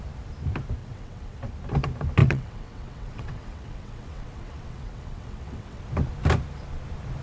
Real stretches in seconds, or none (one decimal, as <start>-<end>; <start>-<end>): 0.0-0.8; 1.5-2.2; 5.8-7.2